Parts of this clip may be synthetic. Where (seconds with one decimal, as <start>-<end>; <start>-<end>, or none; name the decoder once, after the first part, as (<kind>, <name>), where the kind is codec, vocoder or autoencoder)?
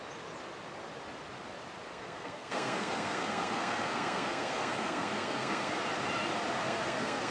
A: 1.9-5.7 (codec, SNAC); 6.6-7.3